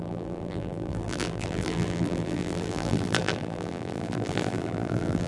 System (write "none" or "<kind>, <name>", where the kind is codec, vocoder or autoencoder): vocoder, BigVGAN v2